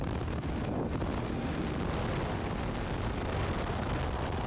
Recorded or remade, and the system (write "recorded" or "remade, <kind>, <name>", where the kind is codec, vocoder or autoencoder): recorded